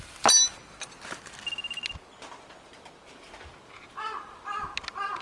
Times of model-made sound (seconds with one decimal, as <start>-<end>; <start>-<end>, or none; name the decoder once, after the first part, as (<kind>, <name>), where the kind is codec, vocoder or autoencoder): none